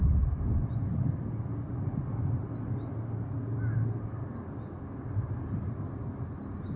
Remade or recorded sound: recorded